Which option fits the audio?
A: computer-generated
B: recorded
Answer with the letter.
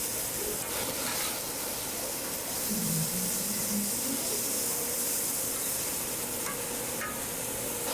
B